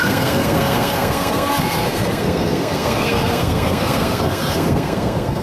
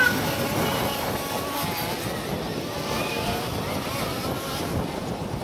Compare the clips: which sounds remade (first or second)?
first